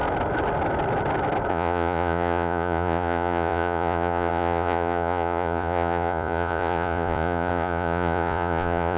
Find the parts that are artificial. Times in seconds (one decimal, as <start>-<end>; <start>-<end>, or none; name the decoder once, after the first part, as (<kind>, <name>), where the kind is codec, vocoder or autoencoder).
1.5-9.0 (vocoder, Vocos)